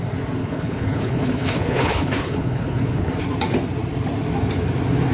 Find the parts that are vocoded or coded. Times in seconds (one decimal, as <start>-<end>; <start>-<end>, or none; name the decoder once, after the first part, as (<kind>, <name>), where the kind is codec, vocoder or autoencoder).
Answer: 0.4-3.1 (codec, HILCodec)